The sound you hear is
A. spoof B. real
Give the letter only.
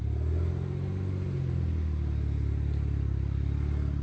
B